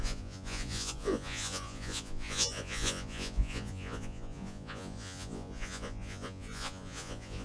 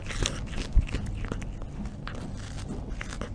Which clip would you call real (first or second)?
second